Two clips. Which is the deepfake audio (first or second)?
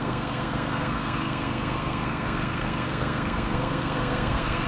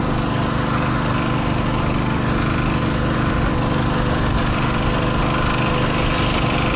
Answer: first